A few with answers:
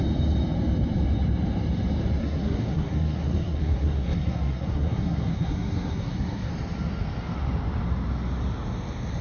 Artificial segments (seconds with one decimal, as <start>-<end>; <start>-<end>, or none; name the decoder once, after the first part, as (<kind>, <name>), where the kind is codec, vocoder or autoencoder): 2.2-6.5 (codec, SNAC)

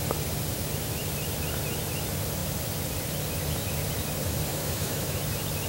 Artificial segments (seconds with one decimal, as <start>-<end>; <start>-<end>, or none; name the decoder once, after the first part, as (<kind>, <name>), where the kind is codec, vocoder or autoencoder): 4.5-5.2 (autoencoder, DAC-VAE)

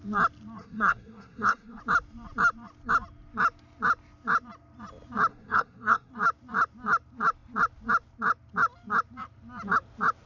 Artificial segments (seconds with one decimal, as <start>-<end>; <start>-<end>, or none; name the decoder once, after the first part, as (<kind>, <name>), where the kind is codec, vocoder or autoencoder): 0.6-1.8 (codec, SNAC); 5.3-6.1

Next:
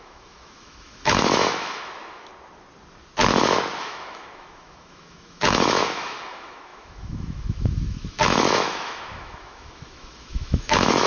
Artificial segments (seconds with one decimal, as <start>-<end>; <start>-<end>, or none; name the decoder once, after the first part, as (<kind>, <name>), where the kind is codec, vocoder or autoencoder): 0.0-2.3 (autoencoder, DAC-VAE); 3.8-11.1

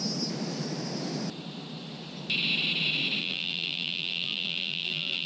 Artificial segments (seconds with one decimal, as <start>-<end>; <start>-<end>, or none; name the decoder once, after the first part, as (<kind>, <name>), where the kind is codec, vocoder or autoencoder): 3.2-5.3 (vocoder, BigVGAN v2)

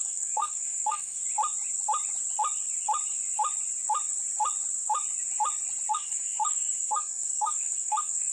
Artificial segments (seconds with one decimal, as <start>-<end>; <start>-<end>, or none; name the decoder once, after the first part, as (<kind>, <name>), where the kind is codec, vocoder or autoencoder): 0.0-1.2 (codec, SNAC); 5.9-8.3

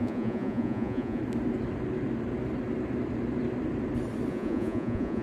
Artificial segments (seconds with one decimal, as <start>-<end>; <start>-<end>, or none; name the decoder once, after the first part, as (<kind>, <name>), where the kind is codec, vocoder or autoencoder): 0.0-1.2 (vocoder, Vocos); 4.3-5.2